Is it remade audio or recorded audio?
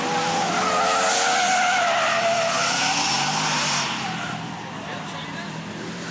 recorded